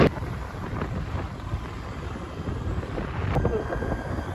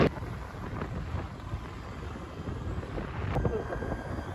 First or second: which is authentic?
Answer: second